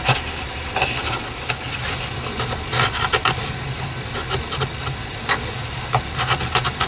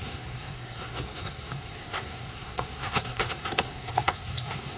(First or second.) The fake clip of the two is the second